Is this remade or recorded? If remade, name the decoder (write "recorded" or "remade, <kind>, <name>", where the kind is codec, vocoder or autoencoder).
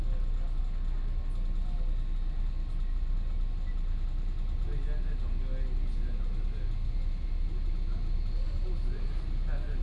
recorded